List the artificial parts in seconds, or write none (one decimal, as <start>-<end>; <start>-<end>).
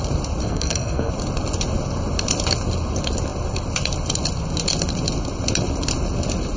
0.4-1.1